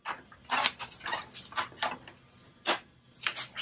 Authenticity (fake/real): real